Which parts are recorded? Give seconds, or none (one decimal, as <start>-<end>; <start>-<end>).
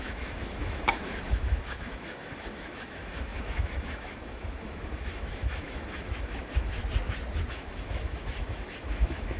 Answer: 6.8-7.5